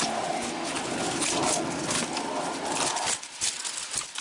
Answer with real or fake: real